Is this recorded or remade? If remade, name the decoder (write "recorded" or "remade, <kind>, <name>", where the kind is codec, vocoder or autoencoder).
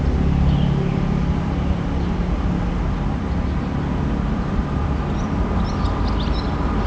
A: recorded